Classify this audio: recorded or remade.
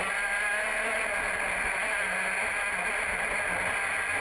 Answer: recorded